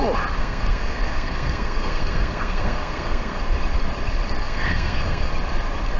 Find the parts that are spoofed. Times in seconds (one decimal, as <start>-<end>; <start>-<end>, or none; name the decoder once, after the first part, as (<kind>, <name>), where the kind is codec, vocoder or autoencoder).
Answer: 0.4-3.4 (codec, SNAC); 4.4-5.3